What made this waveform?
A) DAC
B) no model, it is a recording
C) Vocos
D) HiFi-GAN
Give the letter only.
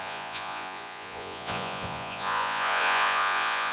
C